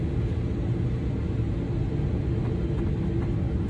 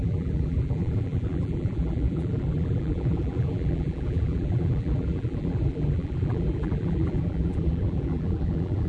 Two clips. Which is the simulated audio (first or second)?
second